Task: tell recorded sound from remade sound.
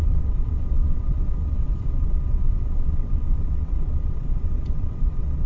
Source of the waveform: remade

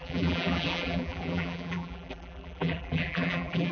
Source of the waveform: remade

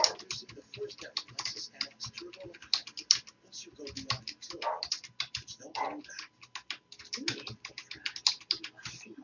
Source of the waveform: recorded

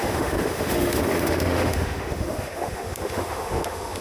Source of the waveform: remade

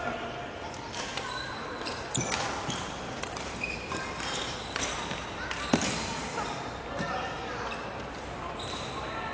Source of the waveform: remade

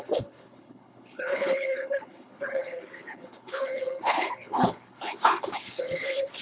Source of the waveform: remade